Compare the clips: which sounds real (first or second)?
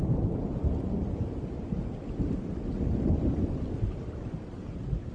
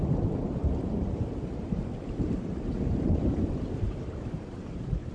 first